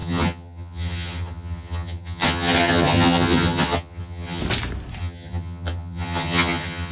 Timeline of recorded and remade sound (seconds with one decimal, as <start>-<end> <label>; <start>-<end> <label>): 0.0-4.4 remade; 4.4-5.0 recorded; 5.0-6.9 remade

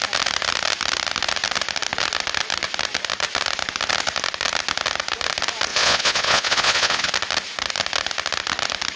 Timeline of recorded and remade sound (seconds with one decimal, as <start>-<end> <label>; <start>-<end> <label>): 0.0-5.7 recorded; 5.7-7.1 remade; 7.1-9.0 recorded

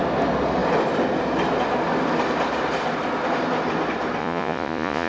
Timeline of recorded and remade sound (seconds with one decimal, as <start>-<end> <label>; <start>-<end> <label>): 0.0-4.2 recorded; 4.2-5.1 remade

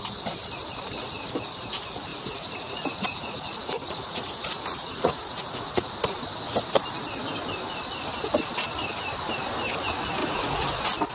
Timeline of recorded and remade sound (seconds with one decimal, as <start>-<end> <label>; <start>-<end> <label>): 0.0-2.1 recorded; 2.1-5.9 remade; 5.9-10.2 recorded; 10.2-10.7 remade; 10.7-11.1 recorded

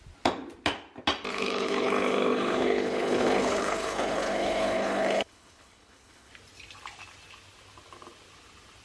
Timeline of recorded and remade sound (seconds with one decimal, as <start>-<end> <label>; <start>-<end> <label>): 0.0-1.3 recorded; 1.3-6.3 remade; 6.3-8.8 recorded

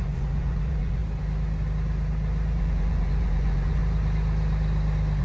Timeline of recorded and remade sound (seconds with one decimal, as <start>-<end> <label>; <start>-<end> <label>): 0.0-1.0 remade; 1.0-2.6 recorded; 2.6-3.8 remade; 3.8-5.2 recorded

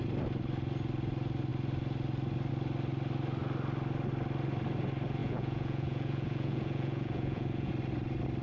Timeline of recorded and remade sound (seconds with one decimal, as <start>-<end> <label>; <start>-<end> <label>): 0.0-5.2 recorded; 5.2-7.7 remade; 7.7-8.4 recorded

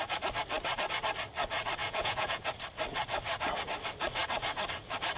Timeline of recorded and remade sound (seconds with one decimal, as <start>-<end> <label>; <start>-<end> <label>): 0.0-1.8 recorded; 1.8-2.5 remade; 2.5-5.2 recorded